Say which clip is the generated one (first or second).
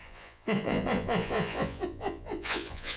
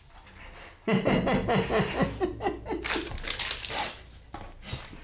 first